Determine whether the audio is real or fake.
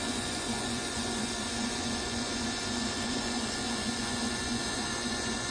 fake